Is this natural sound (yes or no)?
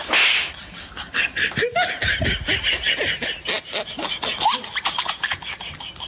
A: yes